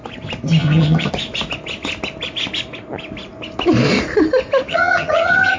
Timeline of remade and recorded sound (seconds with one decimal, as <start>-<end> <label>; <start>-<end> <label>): 0.0-0.6 recorded; 0.6-1.1 remade; 1.1-4.7 recorded; 4.7-5.6 remade